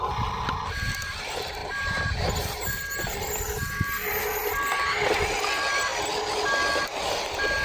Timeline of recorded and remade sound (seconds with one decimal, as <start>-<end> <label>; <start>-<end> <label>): 0.0-1.6 recorded; 1.6-3.2 remade; 3.2-7.6 recorded